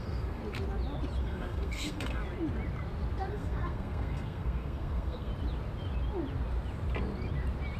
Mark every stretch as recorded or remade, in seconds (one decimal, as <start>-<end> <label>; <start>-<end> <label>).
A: 0.0-0.4 remade; 0.4-1.2 recorded; 1.2-2.2 remade; 2.2-3.3 recorded; 3.3-5.3 remade; 5.3-7.8 recorded